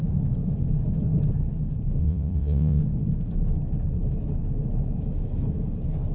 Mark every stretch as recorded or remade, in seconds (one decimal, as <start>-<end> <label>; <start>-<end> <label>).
0.0-2.0 recorded; 2.0-2.8 remade; 2.8-6.1 recorded